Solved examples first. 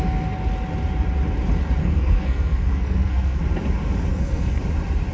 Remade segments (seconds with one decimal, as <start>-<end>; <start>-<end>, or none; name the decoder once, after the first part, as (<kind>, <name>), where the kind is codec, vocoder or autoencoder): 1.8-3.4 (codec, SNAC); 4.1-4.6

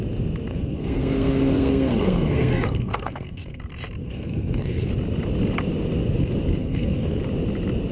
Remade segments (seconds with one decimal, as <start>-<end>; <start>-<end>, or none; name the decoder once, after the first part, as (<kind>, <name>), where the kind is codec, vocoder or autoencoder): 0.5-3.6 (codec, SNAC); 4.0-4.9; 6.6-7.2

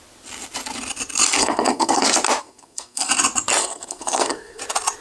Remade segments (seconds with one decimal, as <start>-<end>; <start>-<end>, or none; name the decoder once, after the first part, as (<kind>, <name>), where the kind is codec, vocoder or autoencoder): 1.4-2.0 (codec, SNAC); 2.4-3.1; 3.6-4.6

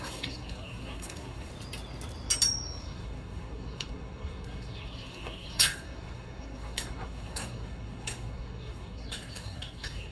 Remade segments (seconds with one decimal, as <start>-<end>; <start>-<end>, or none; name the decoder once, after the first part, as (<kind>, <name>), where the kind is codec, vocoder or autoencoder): 0.0-1.5 (codec, SNAC); 2.8-10.1

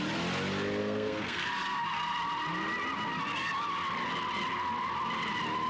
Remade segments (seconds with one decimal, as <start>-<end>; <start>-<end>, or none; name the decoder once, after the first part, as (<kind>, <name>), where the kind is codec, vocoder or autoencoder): 0.8-2.2 (codec, SNAC)